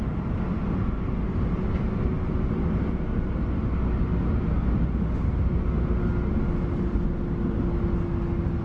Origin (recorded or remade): recorded